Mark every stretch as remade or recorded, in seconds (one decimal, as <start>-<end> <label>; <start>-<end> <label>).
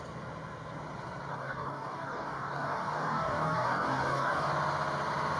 0.0-1.3 recorded; 1.3-4.5 remade; 4.5-5.4 recorded